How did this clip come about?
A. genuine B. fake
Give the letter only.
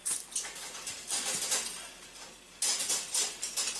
A